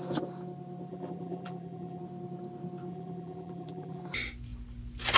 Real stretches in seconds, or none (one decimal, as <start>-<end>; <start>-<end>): 0.0-0.9; 2.0-2.9; 4.0-5.2